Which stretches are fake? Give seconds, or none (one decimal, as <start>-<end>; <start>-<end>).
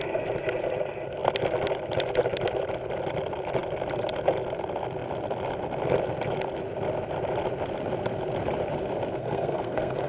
9.2-10.1